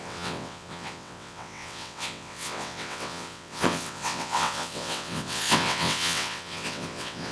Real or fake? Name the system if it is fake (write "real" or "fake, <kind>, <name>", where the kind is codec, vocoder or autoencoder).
fake, vocoder, WaveNeXt